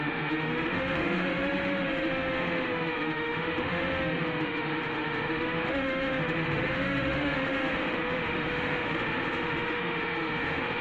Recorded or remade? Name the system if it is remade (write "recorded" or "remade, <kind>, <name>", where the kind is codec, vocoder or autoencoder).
remade, autoencoder, DAC-VAE